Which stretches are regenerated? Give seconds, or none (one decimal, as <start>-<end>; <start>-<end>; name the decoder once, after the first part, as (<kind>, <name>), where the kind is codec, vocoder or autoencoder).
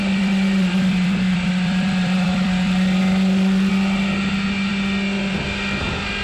0.0-3.7 (vocoder, BigVGAN v2)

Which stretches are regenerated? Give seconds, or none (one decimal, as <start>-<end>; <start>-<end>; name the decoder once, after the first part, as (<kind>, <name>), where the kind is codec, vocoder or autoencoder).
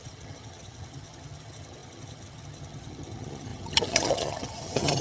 0.0-5.0 (vocoder, HiFi-GAN)